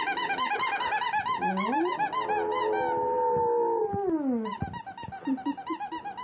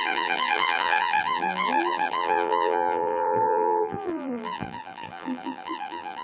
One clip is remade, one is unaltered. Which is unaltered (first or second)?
first